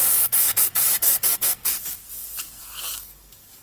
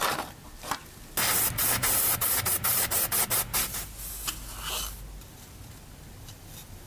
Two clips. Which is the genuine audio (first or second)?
second